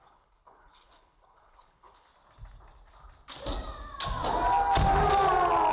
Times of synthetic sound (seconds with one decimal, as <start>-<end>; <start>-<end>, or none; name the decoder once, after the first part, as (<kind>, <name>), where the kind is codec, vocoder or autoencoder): 0.0-2.1 (codec, HILCodec)